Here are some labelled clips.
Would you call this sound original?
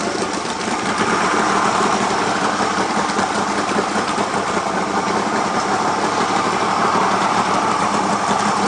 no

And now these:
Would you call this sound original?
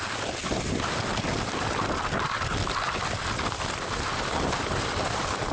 yes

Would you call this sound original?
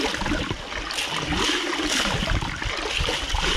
yes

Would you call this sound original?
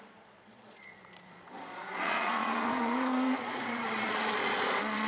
no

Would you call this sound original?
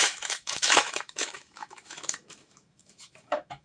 no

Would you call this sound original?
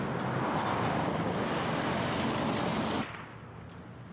yes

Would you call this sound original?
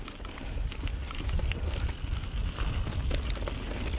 yes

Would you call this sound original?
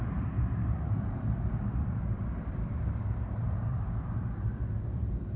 no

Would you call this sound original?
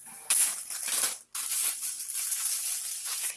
yes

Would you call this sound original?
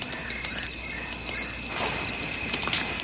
yes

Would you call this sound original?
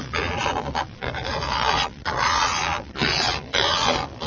no